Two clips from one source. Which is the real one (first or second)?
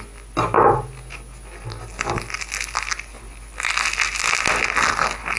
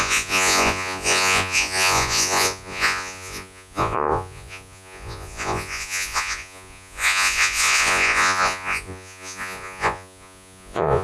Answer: first